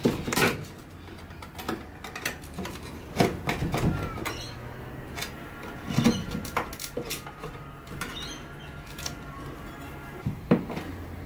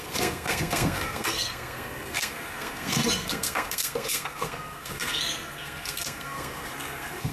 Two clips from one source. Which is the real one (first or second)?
first